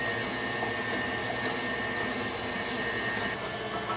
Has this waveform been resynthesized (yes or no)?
no